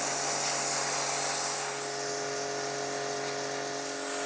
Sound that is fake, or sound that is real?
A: real